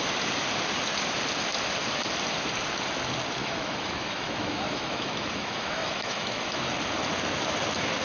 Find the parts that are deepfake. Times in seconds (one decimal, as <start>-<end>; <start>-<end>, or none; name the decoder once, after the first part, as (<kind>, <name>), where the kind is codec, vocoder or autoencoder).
3.4-6.7 (autoencoder, DAC-VAE)

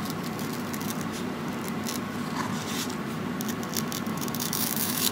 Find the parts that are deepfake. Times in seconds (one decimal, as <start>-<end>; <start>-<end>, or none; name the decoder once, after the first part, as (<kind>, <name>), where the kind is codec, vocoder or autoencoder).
4.1-5.1 (autoencoder, DAC-VAE)

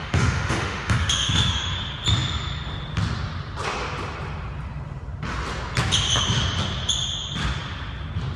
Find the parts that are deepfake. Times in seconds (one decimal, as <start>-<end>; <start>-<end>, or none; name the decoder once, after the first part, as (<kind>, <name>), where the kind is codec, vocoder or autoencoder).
0.0-1.7 (autoencoder, DAC-VAE)

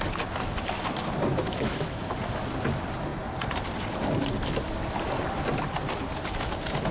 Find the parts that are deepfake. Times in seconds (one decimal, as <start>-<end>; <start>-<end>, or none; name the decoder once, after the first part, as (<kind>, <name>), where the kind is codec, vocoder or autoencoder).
1.3-2.2 (autoencoder, DAC-VAE)

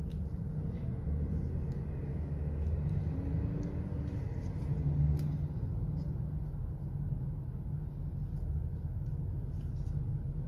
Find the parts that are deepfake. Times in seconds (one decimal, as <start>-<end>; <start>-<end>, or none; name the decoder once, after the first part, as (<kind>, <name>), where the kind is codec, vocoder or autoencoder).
2.1-2.7 (autoencoder, DAC-VAE)